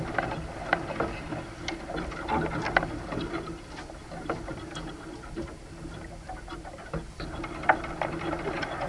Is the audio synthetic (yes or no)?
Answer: no